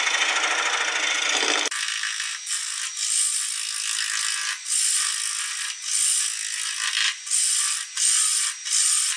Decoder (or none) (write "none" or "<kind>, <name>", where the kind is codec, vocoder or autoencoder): none